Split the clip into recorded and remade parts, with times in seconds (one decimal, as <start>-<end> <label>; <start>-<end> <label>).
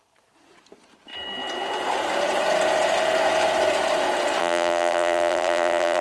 0.0-4.4 recorded; 4.4-6.0 remade